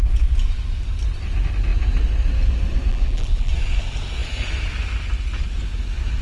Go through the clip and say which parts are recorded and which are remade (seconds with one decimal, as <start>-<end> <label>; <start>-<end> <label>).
0.0-2.9 recorded; 2.9-3.5 remade; 3.5-6.2 recorded